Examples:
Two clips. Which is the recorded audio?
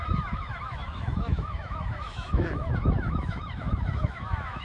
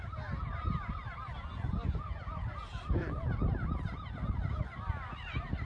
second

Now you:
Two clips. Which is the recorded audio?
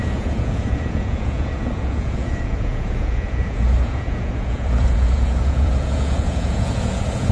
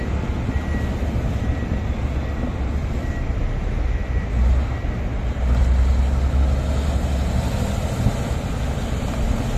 second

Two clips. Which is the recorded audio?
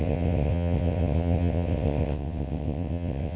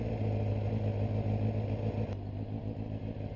second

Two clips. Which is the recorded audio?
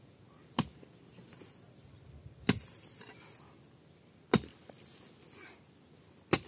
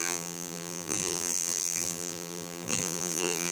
first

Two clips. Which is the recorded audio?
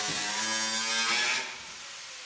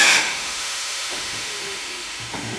first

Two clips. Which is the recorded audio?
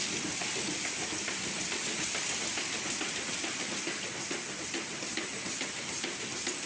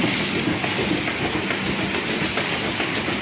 second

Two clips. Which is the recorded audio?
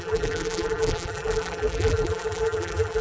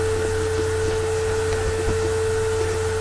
second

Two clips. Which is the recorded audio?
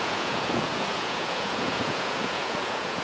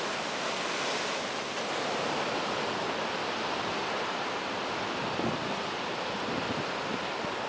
second